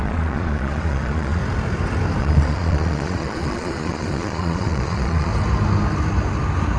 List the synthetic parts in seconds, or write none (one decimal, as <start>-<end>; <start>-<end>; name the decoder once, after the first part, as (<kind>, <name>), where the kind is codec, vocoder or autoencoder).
0.0-1.4 (vocoder, Vocos); 2.2-5.3